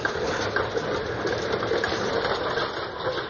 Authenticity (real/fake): real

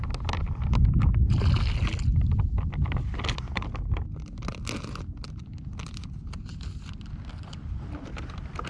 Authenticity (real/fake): real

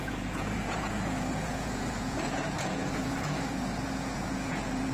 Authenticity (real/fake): fake